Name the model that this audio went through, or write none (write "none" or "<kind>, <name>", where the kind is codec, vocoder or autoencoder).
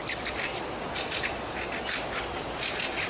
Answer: none